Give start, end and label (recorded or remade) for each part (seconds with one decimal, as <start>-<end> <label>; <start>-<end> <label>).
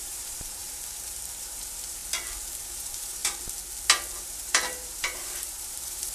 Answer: 0.0-2.0 remade; 2.0-2.6 recorded; 2.6-3.2 remade; 3.2-4.2 recorded; 4.2-6.1 remade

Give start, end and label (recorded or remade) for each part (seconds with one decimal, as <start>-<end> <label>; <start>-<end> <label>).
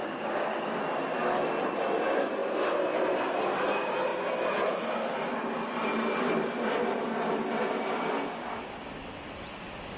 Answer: 0.0-0.8 remade; 0.8-10.0 recorded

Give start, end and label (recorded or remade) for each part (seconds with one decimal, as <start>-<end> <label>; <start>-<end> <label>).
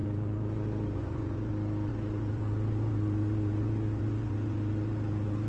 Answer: 0.0-1.5 remade; 1.5-1.9 recorded; 1.9-5.5 remade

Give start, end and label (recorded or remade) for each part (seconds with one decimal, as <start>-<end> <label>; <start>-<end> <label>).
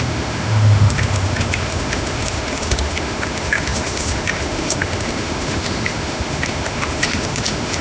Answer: 0.0-7.8 remade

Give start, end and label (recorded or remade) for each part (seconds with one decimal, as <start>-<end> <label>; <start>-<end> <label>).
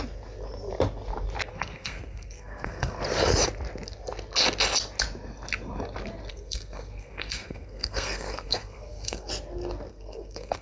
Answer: 0.0-1.5 recorded; 1.5-3.0 remade; 3.0-6.3 recorded; 6.3-9.3 remade; 9.3-9.9 recorded; 9.9-10.6 remade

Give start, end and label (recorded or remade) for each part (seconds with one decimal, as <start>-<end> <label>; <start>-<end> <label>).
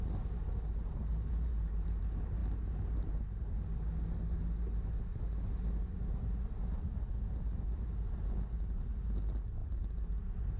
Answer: 0.0-1.1 recorded; 1.1-2.0 remade; 2.0-2.4 recorded; 2.4-3.2 remade; 3.2-10.6 recorded